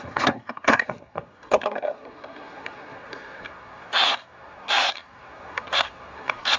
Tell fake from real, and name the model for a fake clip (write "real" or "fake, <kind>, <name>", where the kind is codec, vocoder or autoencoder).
fake, codec, SNAC